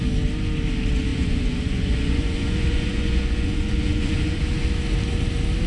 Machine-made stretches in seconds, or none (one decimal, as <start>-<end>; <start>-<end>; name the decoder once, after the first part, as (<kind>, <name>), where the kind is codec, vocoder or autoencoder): 1.1-4.4 (vocoder, Vocos)